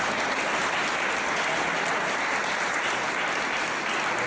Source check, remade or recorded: recorded